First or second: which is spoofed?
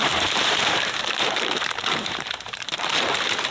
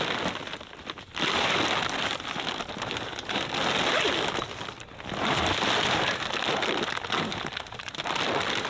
first